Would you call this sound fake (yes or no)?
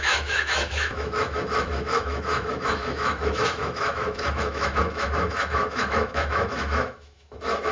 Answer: yes